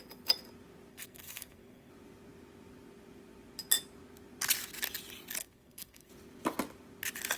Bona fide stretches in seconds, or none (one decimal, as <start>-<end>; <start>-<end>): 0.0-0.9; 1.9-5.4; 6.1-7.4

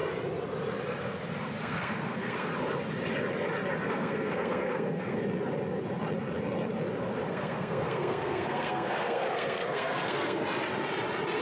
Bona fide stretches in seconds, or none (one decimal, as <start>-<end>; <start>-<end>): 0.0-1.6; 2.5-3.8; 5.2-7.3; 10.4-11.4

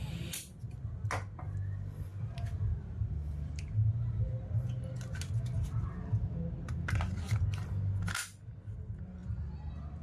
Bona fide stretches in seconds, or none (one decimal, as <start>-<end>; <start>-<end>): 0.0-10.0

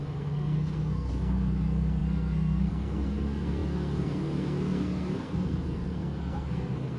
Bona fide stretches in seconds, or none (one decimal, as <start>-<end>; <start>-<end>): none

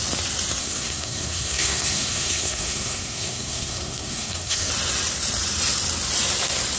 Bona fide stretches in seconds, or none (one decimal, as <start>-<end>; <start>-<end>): 0.0-0.6; 4.7-6.8

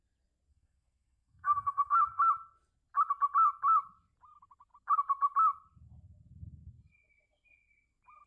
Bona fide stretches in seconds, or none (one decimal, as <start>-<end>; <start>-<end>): 0.0-0.5; 2.2-8.3